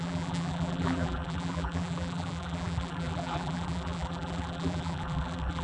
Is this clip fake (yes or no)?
yes